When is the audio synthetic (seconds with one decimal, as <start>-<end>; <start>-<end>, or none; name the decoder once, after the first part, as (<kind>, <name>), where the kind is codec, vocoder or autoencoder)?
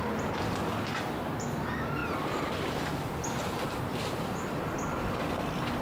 none